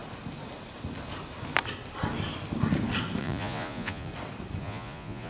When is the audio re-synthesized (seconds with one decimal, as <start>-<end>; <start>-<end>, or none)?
3.2-4.1; 4.6-5.3